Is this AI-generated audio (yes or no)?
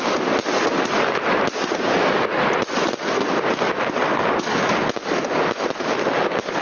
no